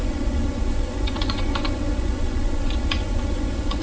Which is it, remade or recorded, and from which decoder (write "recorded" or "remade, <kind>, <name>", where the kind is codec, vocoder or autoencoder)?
remade, vocoder, Vocos